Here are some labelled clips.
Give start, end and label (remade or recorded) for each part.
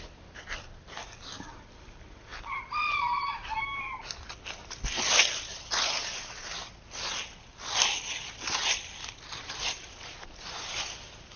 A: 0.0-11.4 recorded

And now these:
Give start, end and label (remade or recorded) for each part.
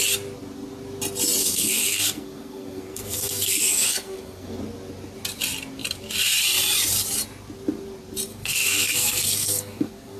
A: 0.0-1.4 recorded; 1.4-4.6 remade; 4.6-8.3 recorded; 8.3-10.2 remade